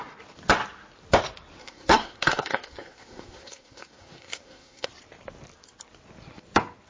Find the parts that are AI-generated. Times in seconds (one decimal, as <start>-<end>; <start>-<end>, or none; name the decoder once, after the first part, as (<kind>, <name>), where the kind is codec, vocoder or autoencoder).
1.6-4.9 (codec, SNAC)